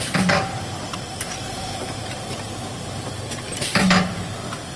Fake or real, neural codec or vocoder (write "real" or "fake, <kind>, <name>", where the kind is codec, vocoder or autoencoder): fake, vocoder, BigVGAN v2